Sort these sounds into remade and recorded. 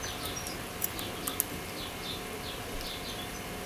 recorded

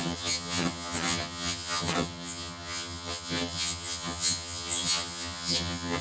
remade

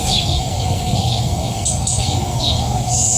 remade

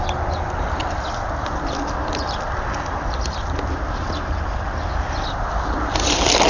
recorded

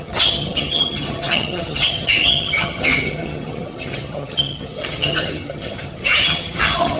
remade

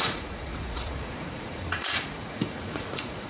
remade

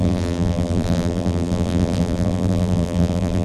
remade